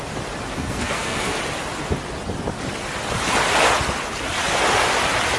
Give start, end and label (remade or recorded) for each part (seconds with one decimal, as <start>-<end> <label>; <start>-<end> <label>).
0.0-0.5 recorded; 0.5-1.4 remade; 1.4-5.4 recorded